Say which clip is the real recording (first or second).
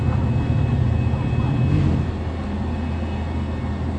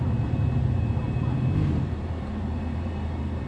first